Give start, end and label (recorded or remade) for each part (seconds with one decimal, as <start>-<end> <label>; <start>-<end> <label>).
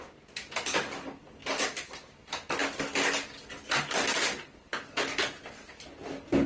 0.0-6.5 recorded